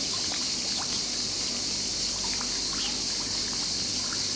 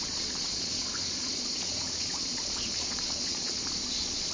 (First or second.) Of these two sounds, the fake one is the second